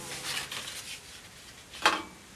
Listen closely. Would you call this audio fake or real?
real